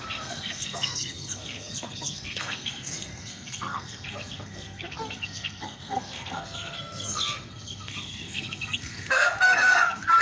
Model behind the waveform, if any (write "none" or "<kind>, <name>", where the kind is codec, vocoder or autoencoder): codec, SNAC